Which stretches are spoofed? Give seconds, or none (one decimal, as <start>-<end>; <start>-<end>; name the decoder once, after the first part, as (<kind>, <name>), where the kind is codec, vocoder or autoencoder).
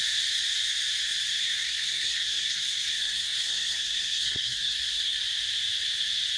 1.4-5.2 (codec, SNAC)